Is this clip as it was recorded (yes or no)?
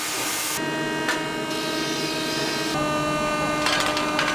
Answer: yes